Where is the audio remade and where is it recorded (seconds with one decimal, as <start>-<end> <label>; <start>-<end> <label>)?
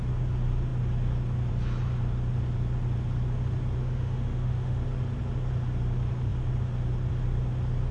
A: 0.0-3.8 recorded; 3.8-4.8 remade; 4.8-7.9 recorded